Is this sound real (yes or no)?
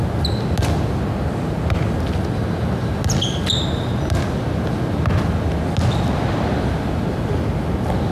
yes